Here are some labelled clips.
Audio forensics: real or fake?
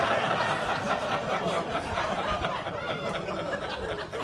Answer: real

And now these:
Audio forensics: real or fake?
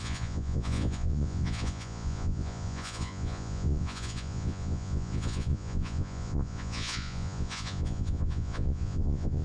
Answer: fake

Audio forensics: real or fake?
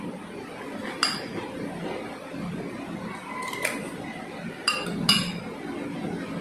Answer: real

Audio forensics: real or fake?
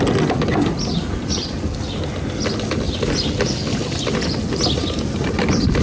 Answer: real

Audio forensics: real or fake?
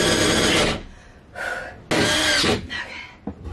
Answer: real